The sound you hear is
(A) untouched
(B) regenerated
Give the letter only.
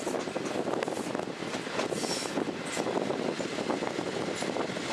A